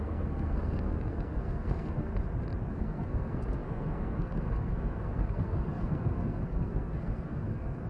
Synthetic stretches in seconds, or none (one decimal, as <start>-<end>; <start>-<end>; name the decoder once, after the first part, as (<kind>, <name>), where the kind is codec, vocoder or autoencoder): 0.0-2.1 (codec, SNAC); 2.7-7.9